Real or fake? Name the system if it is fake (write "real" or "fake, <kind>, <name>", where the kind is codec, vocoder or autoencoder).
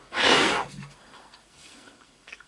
fake, codec, SNAC